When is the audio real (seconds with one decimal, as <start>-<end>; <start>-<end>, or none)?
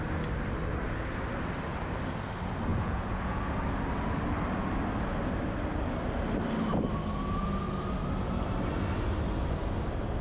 0.0-2.7; 3.4-10.2